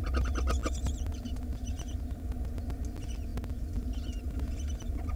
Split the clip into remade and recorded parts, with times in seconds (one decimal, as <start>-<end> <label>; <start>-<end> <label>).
0.0-5.2 recorded